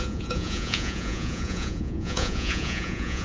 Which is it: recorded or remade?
remade